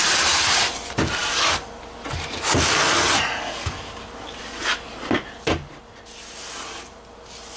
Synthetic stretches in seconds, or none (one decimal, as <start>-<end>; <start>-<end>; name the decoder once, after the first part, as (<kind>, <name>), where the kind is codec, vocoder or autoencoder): none